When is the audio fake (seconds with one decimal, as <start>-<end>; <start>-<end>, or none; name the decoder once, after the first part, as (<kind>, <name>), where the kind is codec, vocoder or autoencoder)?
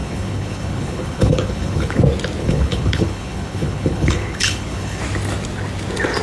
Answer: 0.0-2.0 (codec, HILCodec); 2.4-5.0